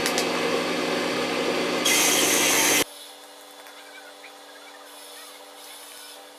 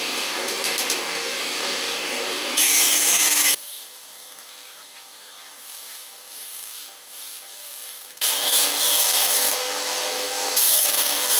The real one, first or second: first